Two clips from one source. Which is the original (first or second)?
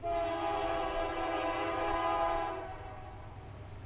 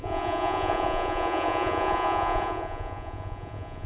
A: first